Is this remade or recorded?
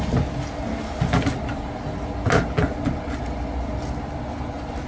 recorded